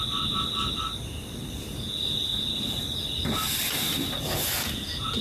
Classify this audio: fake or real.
real